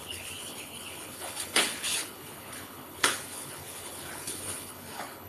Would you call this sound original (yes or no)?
no